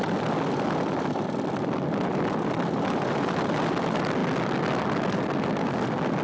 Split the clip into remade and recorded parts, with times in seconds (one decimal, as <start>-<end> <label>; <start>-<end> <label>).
0.0-6.2 recorded